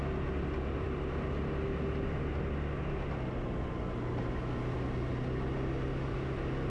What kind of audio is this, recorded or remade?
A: recorded